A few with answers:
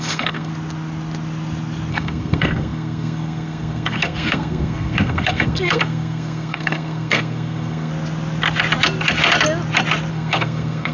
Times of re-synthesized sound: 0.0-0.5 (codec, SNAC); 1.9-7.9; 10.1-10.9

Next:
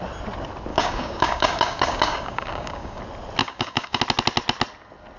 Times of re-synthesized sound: 0.7-3.0 (codec, DAC); 3.4-4.0

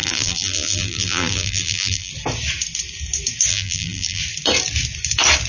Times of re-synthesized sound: 0.0-2.1 (vocoder, BigVGAN v2); 3.5-4.2

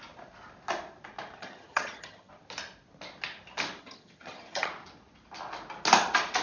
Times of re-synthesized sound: 1.4-2.3 (vocoder, HiFi-GAN); 3.8-4.7

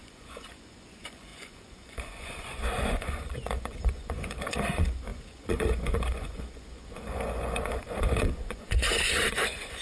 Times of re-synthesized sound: 0.0-9.8 (vocoder, Vocos)

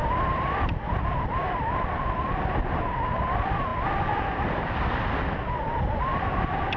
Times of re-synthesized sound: 0.0-0.5 (vocoder, BigVGAN v2); 1.6-3.1

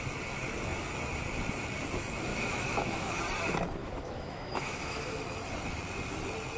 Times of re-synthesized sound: 2.3-3.2 (autoencoder, DAC-VAE); 3.8-5.2